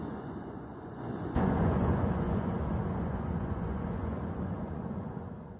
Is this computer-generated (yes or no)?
yes